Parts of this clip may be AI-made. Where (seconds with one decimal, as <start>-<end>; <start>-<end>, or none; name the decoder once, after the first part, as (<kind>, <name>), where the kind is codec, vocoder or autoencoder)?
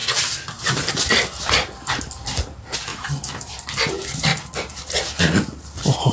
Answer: 2.9-3.5 (autoencoder, DAC-VAE)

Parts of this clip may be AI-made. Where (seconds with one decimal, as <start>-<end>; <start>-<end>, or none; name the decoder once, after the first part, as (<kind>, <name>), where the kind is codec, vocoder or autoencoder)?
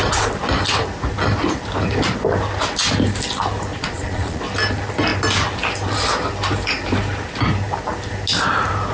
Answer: 3.7-4.4 (vocoder, Vocos)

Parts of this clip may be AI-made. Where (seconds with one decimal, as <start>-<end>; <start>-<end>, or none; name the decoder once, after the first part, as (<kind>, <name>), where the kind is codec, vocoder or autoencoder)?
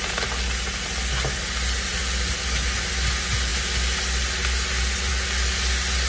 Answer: none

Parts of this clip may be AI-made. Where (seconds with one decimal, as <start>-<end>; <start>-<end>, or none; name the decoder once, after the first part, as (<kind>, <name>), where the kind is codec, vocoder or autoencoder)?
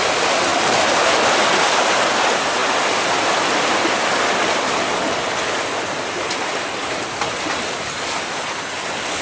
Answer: 0.5-1.6 (vocoder, BigVGAN v2)